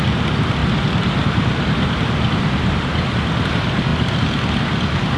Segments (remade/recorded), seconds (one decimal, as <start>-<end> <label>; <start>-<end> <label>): 0.0-5.2 recorded